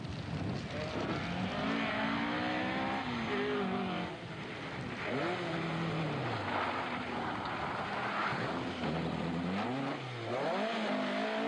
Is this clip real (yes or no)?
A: yes